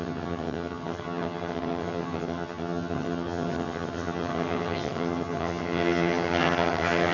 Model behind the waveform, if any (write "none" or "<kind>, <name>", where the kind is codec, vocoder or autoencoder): vocoder, HiFi-GAN